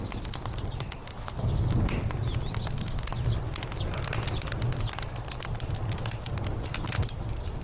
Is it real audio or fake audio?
real